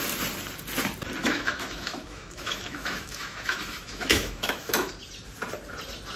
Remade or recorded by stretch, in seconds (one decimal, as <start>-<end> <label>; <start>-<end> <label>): 0.0-1.2 recorded; 1.2-4.9 remade; 4.9-6.2 recorded